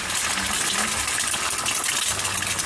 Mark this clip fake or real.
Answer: real